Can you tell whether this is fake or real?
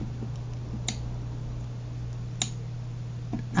real